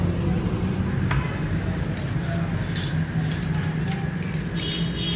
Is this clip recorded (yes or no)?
yes